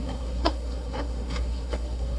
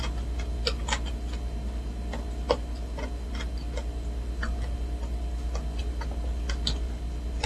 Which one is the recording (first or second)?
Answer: second